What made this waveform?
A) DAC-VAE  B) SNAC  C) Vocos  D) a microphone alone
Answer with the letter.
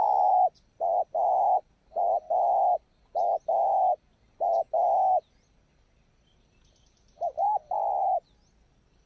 D